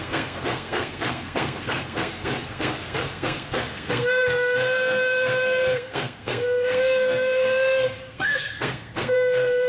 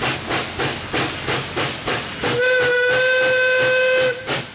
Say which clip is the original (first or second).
second